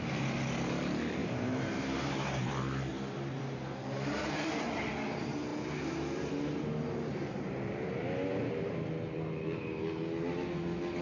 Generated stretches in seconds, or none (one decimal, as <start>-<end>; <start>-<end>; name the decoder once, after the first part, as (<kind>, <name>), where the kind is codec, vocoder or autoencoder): 1.2-2.5 (vocoder, BigVGAN v2); 2.9-4.9; 7.1-8.9